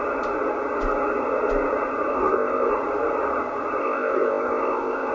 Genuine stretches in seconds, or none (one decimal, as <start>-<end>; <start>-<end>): 0.0-2.1; 2.7-3.8